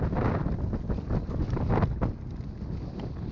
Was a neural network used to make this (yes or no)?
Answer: no